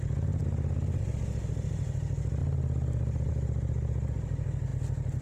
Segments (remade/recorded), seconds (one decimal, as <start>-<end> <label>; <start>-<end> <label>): 0.0-5.2 recorded